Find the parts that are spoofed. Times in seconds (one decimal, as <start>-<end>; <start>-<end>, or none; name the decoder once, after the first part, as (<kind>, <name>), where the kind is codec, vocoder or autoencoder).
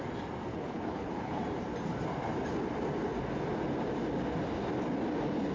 0.5-1.4 (codec, HILCodec)